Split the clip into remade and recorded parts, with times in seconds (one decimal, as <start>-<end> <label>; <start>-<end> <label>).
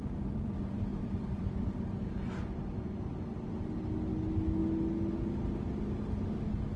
0.0-0.9 recorded; 0.9-2.1 remade; 2.1-6.8 recorded